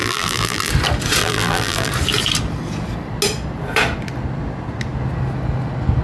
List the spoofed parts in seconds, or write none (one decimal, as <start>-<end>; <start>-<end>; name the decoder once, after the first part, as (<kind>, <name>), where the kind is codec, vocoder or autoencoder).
0.0-0.7 (vocoder, BigVGAN v2); 1.2-1.9